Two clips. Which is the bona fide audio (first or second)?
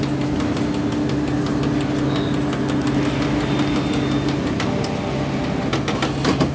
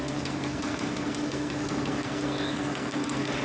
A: first